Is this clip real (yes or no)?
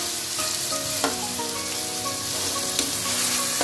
yes